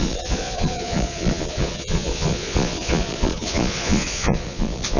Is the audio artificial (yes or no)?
yes